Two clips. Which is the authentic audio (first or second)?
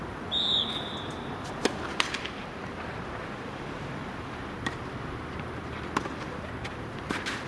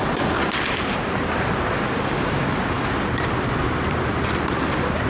second